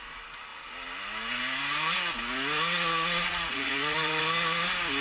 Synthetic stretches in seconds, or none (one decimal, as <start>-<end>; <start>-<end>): 3.3-4.2